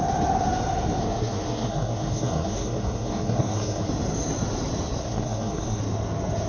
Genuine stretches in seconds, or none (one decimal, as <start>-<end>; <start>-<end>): 0.0-1.0; 3.9-5.0; 5.8-6.5